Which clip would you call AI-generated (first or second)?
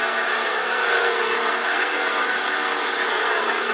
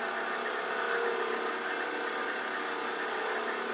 first